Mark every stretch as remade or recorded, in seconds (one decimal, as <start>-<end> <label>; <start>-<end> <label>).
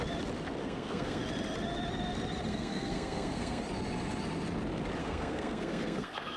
0.0-0.6 recorded; 0.6-1.2 remade; 1.2-2.5 recorded; 2.5-3.6 remade; 3.6-5.0 recorded; 5.0-6.4 remade